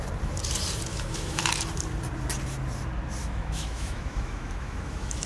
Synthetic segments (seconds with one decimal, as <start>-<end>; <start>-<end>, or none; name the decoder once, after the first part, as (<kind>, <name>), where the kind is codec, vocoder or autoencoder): 0.9-1.4 (autoencoder, DAC-VAE); 3.2-5.3